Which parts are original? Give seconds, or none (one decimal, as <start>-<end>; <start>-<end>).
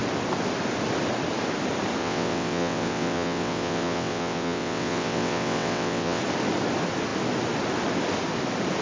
0.0-2.0; 6.2-8.8